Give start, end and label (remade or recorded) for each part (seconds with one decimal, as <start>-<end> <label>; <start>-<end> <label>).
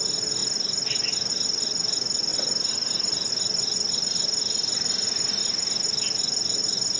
0.0-2.3 recorded; 2.3-3.3 remade; 3.3-7.0 recorded